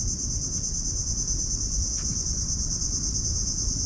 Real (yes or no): yes